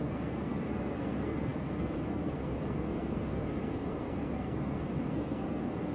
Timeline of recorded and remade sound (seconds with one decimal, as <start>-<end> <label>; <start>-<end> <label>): 0.0-5.9 remade